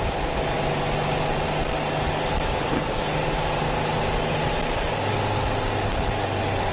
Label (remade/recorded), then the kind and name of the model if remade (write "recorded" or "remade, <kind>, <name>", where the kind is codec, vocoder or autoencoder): recorded